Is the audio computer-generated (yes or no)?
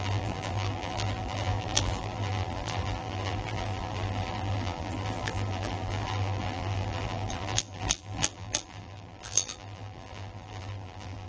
yes